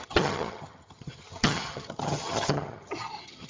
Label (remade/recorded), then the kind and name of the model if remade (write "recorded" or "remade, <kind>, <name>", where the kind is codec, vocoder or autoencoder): remade, vocoder, HiFi-GAN